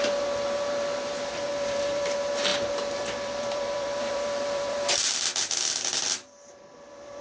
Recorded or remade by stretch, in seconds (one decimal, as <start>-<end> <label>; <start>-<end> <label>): 0.0-7.2 remade